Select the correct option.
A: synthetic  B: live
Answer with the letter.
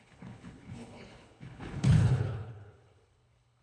A